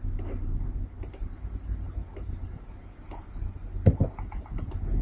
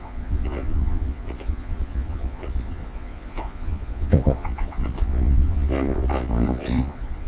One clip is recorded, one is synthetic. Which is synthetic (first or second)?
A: second